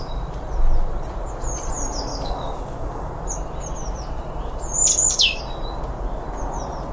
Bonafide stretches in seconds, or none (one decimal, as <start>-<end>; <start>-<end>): 0.0-2.1; 3.1-4.9; 5.4-6.9